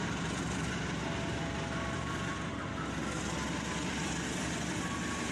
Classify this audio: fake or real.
real